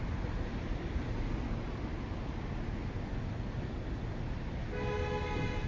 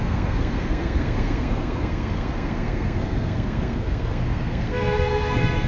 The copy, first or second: second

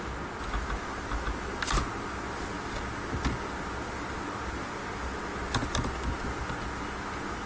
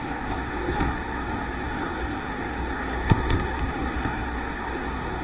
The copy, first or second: second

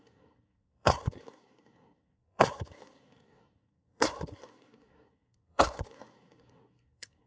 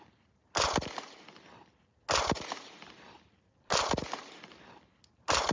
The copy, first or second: first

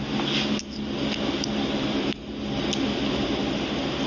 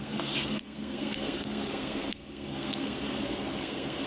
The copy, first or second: second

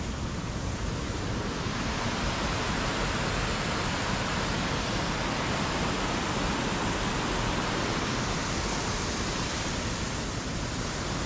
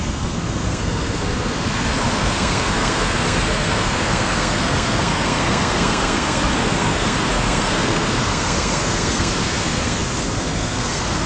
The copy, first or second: second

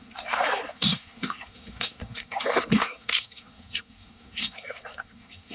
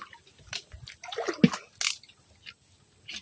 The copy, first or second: first